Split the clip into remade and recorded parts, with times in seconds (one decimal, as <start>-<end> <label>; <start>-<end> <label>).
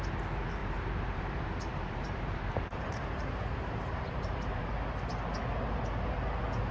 0.0-0.6 recorded; 0.6-4.6 remade; 4.6-6.7 recorded